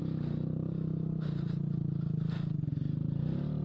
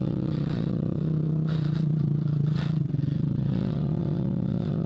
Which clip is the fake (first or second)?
second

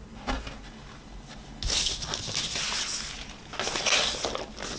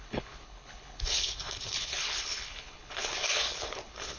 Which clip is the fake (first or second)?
second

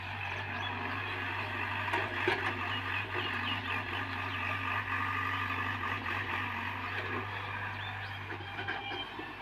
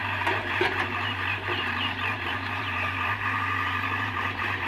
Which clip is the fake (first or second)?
second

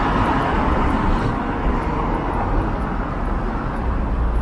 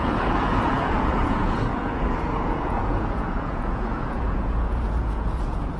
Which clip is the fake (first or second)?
second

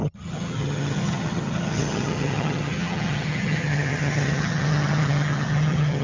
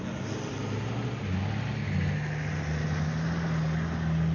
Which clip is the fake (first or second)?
first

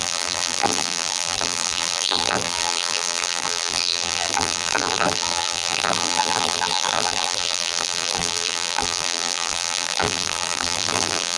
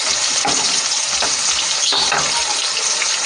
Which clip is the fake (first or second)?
first